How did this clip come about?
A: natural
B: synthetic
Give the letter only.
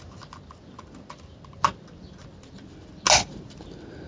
A